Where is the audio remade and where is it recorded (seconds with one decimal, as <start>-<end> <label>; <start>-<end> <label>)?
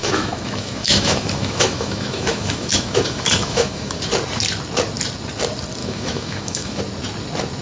0.0-4.0 remade; 4.0-5.8 recorded; 5.8-6.8 remade; 6.8-7.6 recorded